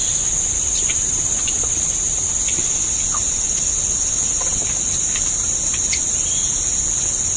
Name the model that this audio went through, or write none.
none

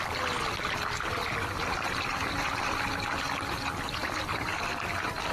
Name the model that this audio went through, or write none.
none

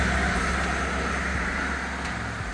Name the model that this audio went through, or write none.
none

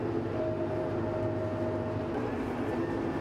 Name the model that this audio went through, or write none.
none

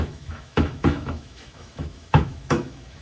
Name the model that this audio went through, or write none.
autoencoder, DAC-VAE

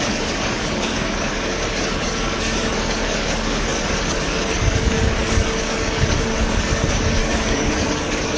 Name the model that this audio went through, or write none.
codec, DAC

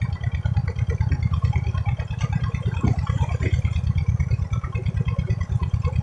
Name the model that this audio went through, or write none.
none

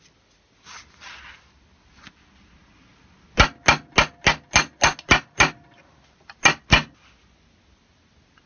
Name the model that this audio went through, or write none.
none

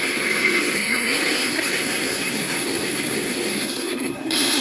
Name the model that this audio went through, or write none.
codec, SNAC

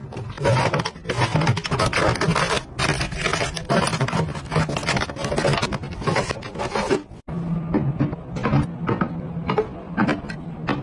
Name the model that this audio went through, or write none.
none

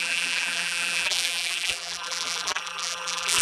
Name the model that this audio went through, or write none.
vocoder, BigVGAN v2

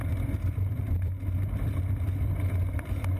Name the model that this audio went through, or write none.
vocoder, BigVGAN v2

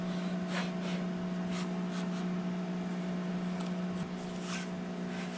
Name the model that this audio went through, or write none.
none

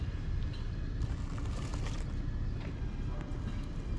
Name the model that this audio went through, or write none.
none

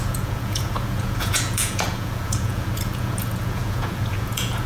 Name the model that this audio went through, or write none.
vocoder, Vocos